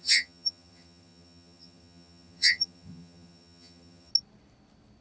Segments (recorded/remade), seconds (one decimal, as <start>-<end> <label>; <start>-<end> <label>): 0.0-4.1 remade; 4.1-5.0 recorded